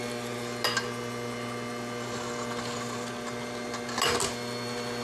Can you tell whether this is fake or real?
real